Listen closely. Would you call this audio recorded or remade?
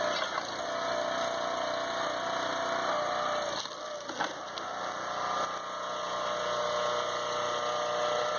recorded